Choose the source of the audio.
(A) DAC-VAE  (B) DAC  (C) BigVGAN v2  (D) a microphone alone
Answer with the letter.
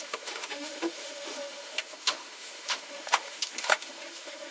A